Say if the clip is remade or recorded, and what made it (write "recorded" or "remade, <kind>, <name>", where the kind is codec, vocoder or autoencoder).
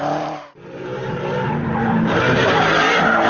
remade, vocoder, BigVGAN v2